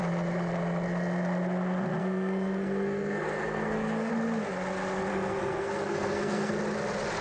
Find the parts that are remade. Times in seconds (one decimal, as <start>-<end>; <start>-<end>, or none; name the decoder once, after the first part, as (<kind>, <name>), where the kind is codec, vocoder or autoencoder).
2.0-4.1 (codec, SNAC); 5.1-6.5